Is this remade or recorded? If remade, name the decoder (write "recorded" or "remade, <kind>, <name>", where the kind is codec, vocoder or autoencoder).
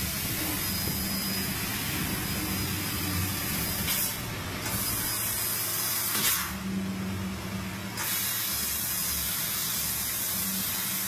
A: recorded